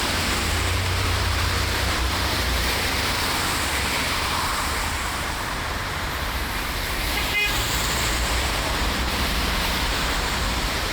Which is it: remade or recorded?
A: remade